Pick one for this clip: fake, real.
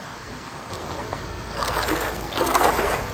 fake